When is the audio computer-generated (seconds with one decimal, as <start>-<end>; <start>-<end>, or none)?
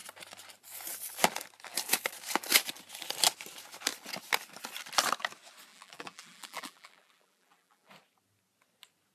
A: 5.7-7.9